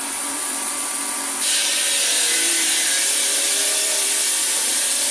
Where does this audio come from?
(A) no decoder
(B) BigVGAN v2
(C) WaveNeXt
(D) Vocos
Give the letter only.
B